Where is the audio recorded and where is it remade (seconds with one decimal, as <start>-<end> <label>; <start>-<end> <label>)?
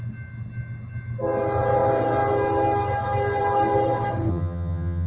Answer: 0.0-4.3 recorded; 4.3-5.1 remade